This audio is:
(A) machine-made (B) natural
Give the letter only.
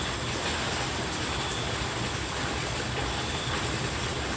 B